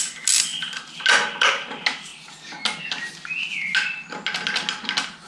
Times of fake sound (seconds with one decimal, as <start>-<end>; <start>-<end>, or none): none